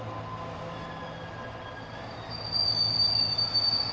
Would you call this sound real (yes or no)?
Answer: yes